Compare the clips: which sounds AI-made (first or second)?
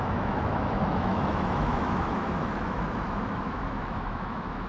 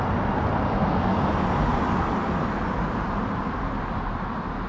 first